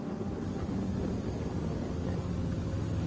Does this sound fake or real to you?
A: real